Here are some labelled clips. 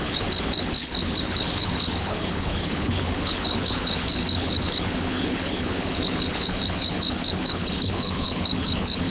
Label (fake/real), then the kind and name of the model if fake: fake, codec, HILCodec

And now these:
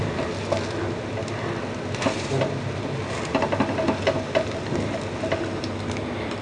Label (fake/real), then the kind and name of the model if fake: real